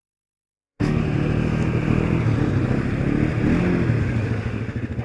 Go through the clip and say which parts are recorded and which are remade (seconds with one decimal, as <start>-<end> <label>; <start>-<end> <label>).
0.0-1.0 remade; 1.0-4.0 recorded; 4.0-5.0 remade